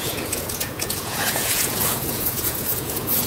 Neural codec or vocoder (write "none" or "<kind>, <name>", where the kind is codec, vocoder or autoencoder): vocoder, Vocos